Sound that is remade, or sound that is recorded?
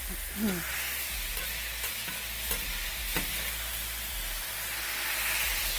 recorded